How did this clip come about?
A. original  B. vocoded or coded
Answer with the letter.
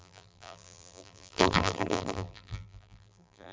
B